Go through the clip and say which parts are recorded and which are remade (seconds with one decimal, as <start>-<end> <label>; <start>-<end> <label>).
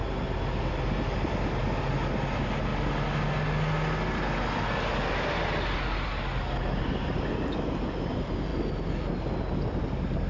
0.0-10.3 recorded